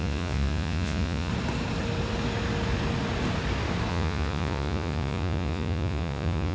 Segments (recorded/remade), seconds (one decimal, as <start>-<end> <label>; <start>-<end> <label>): 0.0-1.3 remade; 1.3-3.9 recorded; 3.9-6.5 remade